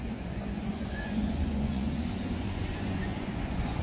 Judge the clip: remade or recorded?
remade